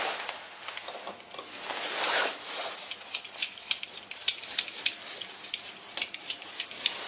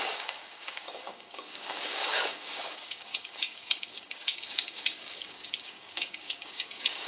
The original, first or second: first